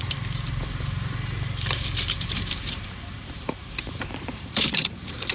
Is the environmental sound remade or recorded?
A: remade